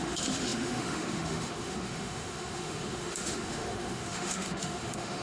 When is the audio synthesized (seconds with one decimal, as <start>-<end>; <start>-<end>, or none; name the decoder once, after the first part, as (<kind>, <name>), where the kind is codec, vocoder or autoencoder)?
0.0-5.2 (autoencoder, DAC-VAE)